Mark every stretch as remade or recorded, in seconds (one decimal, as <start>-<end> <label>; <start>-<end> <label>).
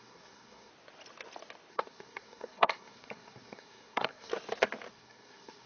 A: 0.0-0.7 remade; 0.7-1.7 recorded; 1.7-4.3 remade; 4.3-4.9 recorded; 4.9-5.7 remade